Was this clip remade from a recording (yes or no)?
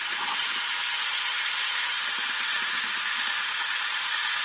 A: yes